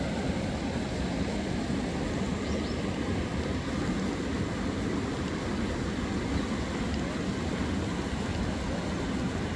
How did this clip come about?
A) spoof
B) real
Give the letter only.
B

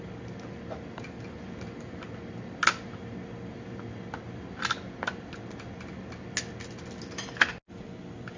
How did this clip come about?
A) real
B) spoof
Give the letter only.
A